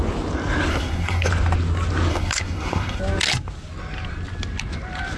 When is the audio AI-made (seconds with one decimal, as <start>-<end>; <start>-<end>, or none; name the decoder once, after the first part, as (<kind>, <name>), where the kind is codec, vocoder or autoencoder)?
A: 0.7-1.3 (codec, SNAC); 2.1-3.0